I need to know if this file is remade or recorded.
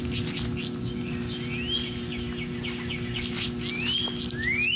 recorded